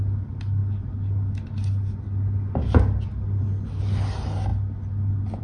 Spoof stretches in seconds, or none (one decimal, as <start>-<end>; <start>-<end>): none